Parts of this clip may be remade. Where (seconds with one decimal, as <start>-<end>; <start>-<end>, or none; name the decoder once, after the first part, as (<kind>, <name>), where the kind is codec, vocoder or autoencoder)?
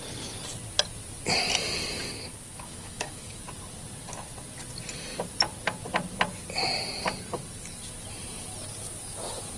2.3-3.4 (autoencoder, DAC-VAE)